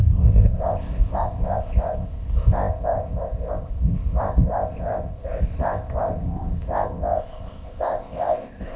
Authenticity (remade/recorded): remade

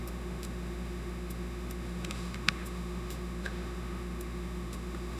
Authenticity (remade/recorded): remade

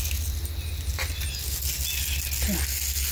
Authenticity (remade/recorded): recorded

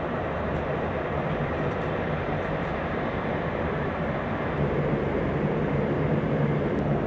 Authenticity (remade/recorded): remade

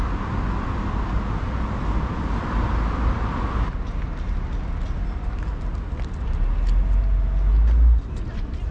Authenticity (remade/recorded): recorded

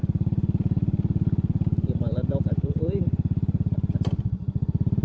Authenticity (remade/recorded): remade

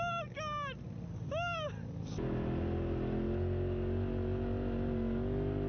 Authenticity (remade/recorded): recorded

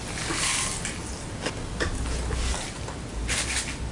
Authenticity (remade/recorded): recorded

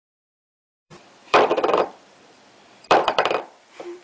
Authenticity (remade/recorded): remade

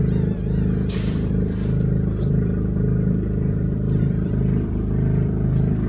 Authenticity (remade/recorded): remade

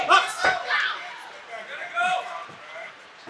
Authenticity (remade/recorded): recorded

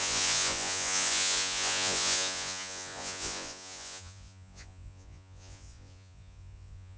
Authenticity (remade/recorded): remade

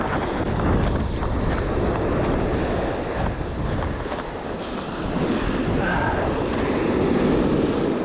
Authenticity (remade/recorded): recorded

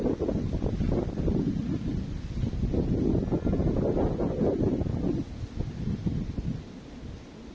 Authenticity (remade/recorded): recorded